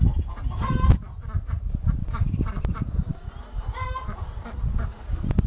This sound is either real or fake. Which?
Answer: real